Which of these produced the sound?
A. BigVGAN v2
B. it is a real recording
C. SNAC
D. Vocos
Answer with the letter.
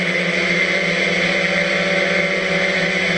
B